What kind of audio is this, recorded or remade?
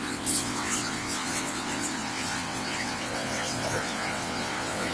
remade